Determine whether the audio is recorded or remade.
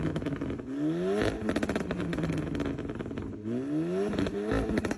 recorded